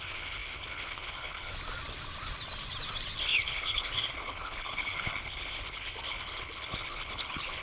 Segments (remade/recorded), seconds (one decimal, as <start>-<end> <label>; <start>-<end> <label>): 0.0-1.5 remade; 1.5-3.2 recorded; 3.2-7.6 remade